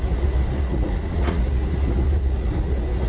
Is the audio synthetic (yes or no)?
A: yes